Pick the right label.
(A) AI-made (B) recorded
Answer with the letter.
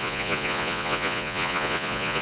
A